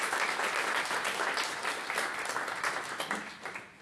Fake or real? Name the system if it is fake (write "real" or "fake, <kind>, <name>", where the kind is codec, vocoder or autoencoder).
real